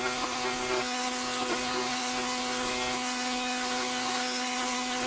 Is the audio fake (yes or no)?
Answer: yes